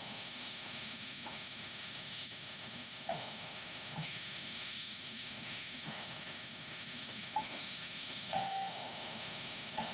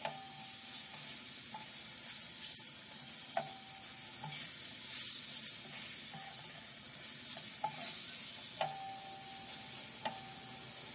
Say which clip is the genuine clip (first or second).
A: second